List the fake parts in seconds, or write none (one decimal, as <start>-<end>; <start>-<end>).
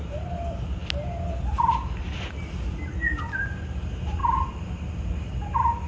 none